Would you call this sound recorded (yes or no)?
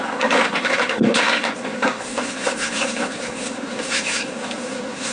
no